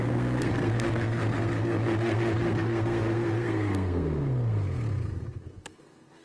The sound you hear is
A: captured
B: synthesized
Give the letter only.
B